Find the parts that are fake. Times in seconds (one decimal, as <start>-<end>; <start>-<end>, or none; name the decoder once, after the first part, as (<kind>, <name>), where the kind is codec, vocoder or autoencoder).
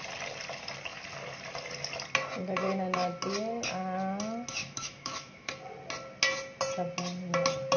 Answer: 4.6-5.5 (autoencoder, DAC-VAE)